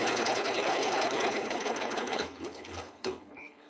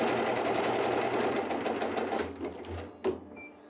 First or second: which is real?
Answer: second